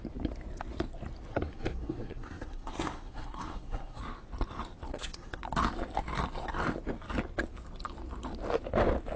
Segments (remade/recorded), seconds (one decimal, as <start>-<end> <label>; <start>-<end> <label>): 0.0-1.3 recorded; 1.3-4.0 remade; 4.0-4.9 recorded; 4.9-5.4 remade; 5.4-9.2 recorded